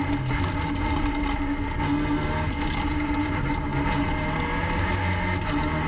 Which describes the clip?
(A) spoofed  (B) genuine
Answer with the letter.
B